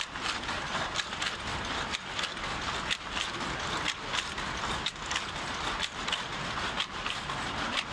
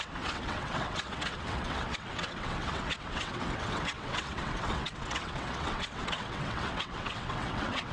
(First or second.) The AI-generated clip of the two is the second